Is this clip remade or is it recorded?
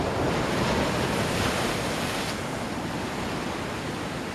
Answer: recorded